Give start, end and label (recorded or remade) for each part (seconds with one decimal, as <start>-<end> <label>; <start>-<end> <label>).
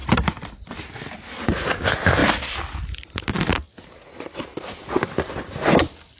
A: 0.0-6.2 recorded